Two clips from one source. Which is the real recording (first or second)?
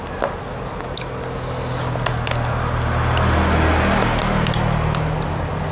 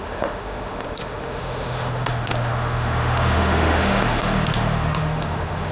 first